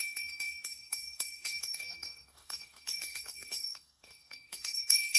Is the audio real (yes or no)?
no